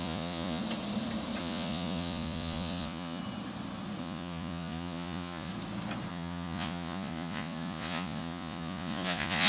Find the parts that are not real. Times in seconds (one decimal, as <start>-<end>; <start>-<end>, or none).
0.0-0.6; 1.4-3.2; 4.0-5.5; 6.1-9.5